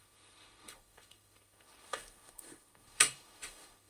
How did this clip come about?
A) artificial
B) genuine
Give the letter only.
A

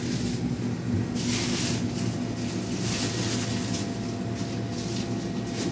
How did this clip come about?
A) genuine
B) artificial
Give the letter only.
A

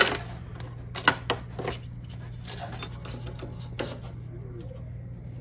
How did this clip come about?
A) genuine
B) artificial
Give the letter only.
A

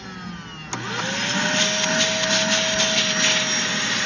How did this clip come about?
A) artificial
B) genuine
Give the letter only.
B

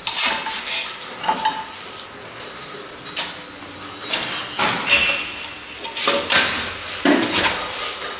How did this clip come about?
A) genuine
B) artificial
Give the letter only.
A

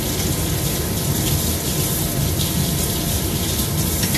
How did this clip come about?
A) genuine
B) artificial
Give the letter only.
A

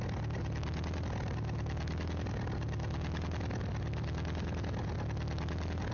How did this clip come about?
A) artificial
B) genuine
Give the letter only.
B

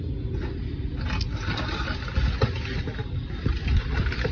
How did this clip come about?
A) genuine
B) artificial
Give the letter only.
A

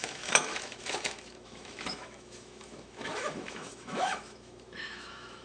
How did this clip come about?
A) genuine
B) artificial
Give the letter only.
B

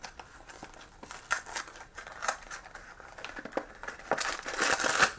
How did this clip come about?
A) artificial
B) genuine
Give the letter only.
B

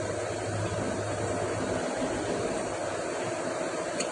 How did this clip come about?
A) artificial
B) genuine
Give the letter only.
B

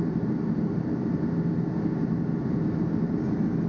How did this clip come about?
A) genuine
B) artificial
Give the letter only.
A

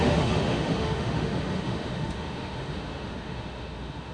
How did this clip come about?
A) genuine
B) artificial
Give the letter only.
B